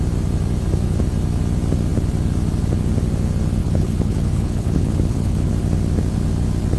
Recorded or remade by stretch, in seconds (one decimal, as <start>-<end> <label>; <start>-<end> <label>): 0.0-3.6 recorded; 3.6-5.5 remade; 5.5-6.8 recorded